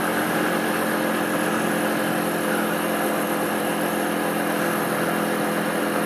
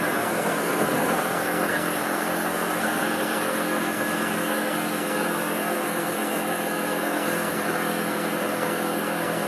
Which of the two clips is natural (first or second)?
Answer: first